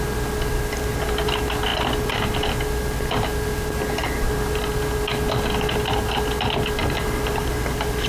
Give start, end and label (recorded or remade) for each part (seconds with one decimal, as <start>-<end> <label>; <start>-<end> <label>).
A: 0.0-8.1 recorded